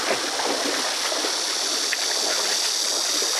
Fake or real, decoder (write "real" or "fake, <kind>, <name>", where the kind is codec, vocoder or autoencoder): real